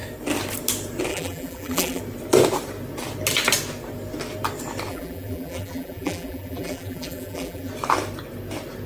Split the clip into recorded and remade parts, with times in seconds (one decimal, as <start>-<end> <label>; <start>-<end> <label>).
0.0-1.1 recorded; 1.1-2.0 remade; 2.0-4.9 recorded; 4.9-7.7 remade; 7.7-8.9 recorded